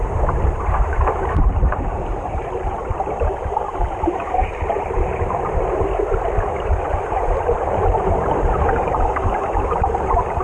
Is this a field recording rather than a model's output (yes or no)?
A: no